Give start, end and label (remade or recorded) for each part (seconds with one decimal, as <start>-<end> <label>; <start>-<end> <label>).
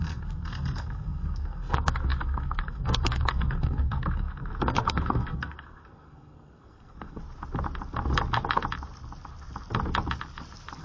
0.0-7.2 remade; 7.2-10.8 recorded